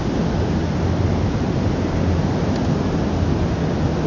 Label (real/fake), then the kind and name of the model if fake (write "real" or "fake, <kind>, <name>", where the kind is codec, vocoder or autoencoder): real